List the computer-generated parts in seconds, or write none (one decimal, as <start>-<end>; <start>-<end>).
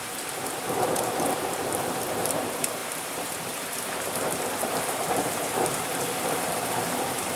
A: 0.0-7.4